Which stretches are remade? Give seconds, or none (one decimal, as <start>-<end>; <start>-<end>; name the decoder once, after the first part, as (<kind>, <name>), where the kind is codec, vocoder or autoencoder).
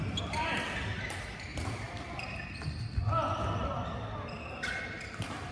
none